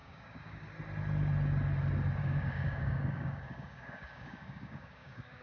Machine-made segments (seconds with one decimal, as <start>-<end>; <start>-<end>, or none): 0.0-0.7; 2.2-5.4